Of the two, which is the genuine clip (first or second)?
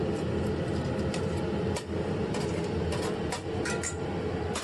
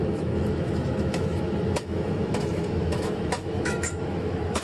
first